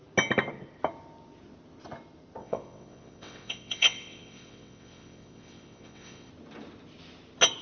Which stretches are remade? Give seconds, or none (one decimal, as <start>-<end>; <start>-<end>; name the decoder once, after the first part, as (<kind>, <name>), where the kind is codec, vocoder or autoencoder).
2.4-6.3 (vocoder, WaveNeXt)